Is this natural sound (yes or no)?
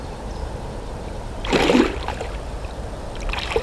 no